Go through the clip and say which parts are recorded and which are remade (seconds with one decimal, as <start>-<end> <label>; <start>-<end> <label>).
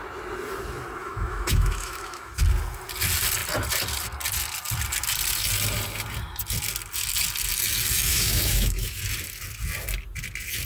0.0-1.0 recorded; 1.0-2.3 remade; 2.3-8.1 recorded; 8.1-9.0 remade; 9.0-10.7 recorded